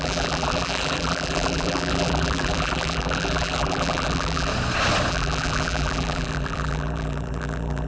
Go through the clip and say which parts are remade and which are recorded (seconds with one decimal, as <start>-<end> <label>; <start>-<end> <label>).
0.0-4.5 remade; 4.5-5.1 recorded; 5.1-7.9 remade